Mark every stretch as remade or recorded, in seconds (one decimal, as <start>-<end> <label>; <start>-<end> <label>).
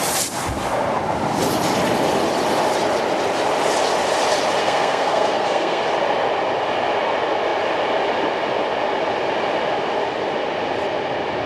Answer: 0.0-4.6 recorded; 4.6-5.8 remade; 5.8-11.5 recorded